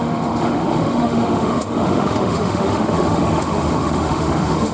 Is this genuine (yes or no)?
no